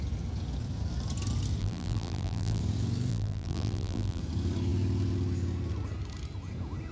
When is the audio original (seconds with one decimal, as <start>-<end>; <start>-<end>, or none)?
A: 0.0-1.6; 2.6-3.1; 4.2-6.9